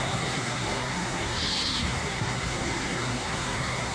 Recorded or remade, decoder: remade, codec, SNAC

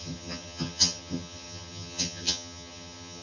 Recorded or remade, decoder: remade, vocoder, HiFi-GAN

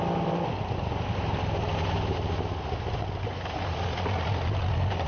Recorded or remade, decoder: recorded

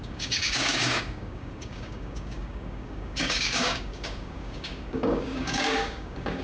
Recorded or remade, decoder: remade, codec, DAC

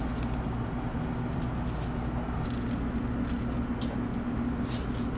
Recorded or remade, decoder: recorded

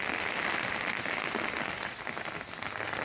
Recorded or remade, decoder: recorded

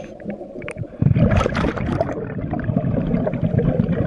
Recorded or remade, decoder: recorded